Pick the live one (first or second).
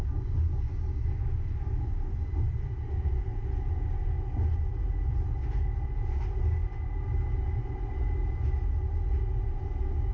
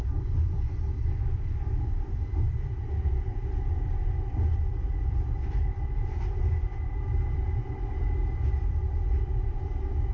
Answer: first